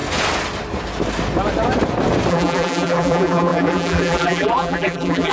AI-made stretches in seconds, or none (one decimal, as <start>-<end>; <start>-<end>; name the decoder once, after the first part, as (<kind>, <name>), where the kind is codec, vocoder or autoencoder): 2.3-5.3 (vocoder, BigVGAN v2)